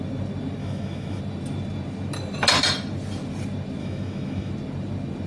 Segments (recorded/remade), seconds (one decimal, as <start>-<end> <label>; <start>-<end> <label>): 0.0-0.6 recorded; 0.6-1.2 remade; 1.2-3.8 recorded; 3.8-4.5 remade; 4.5-5.3 recorded